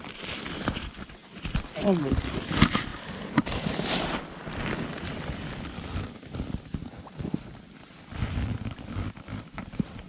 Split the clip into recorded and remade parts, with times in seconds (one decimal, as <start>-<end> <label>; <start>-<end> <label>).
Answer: 0.0-2.9 remade; 2.9-8.0 recorded; 8.0-10.1 remade